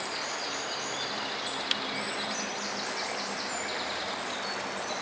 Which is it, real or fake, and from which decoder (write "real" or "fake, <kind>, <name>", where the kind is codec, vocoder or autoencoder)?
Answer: real